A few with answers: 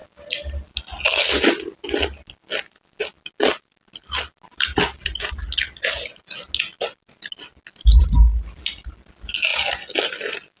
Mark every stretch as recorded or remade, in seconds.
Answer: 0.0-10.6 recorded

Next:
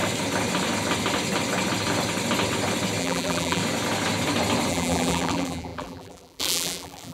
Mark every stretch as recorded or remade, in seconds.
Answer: 0.0-3.0 recorded; 3.0-3.6 remade; 3.6-4.7 recorded; 4.7-7.1 remade

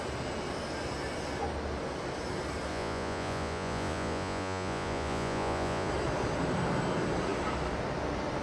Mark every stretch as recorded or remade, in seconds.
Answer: 0.0-2.7 recorded; 2.7-5.9 remade; 5.9-8.4 recorded

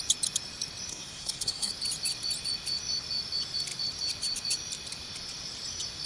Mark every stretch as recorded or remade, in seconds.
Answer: 0.0-0.9 recorded; 0.9-1.7 remade; 1.7-6.1 recorded